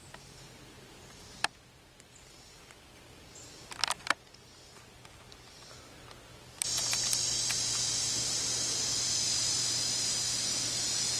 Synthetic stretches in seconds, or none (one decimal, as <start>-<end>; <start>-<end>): none